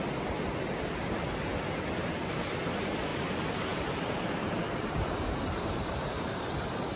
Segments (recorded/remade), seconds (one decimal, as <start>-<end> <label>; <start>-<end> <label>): 0.0-3.1 recorded; 3.1-6.4 remade; 6.4-7.0 recorded